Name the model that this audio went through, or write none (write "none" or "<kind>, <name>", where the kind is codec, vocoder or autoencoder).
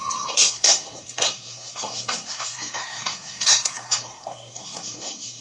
codec, SNAC